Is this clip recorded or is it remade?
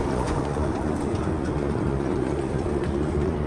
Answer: remade